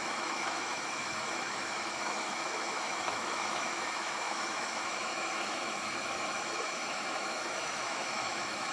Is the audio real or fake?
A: fake